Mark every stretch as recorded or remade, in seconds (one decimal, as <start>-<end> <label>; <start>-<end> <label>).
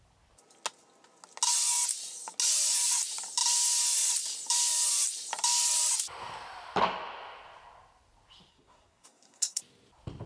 0.0-8.5 recorded; 8.5-9.6 remade; 9.6-10.3 recorded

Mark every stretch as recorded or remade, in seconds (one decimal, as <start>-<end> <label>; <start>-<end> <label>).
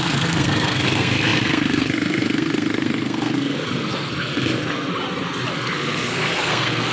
0.0-4.9 remade; 4.9-5.5 recorded; 5.5-6.9 remade